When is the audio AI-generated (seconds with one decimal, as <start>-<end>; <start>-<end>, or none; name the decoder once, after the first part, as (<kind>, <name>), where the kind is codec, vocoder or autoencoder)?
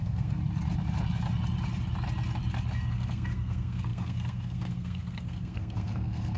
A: 0.0-0.4 (codec, SNAC); 2.9-6.4